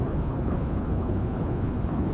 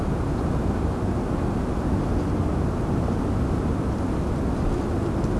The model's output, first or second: first